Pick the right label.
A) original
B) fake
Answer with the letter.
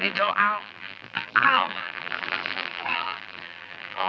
B